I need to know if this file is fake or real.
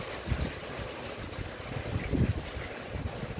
real